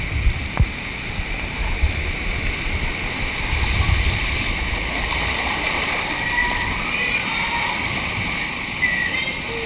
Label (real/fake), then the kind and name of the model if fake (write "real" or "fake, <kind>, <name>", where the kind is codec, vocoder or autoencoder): real